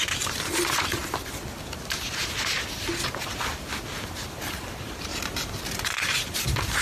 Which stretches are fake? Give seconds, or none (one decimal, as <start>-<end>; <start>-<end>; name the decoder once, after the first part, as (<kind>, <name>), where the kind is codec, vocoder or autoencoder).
0.0-1.0 (vocoder, BigVGAN v2); 4.6-5.1; 6.0-6.8